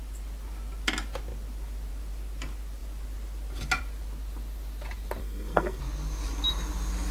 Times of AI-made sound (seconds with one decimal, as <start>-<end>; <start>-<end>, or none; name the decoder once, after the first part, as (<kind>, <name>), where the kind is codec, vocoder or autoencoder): 5.2-5.8 (codec, SNAC)